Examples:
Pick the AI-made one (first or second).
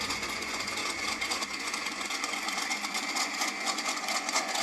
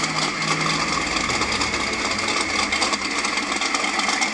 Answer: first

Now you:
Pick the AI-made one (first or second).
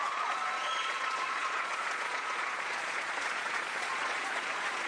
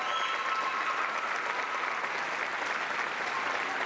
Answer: first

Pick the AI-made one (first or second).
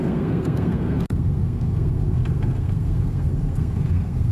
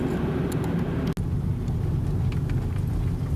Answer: first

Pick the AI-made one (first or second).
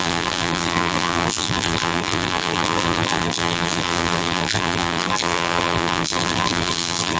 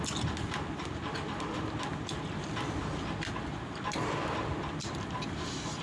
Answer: first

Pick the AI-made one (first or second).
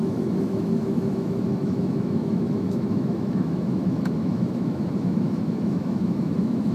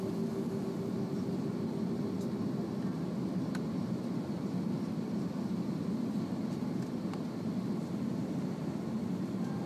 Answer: first